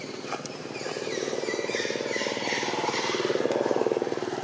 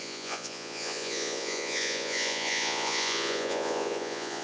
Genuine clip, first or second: first